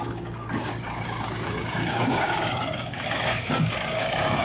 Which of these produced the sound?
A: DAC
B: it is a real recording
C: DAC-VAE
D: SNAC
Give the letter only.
A